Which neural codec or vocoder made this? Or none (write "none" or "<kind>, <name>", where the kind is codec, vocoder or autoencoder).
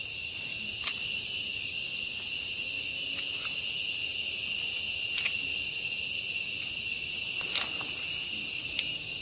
none